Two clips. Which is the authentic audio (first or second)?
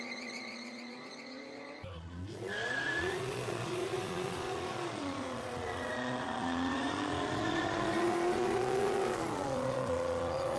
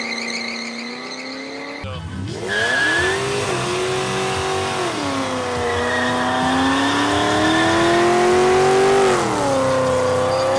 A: second